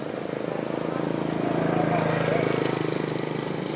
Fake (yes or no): no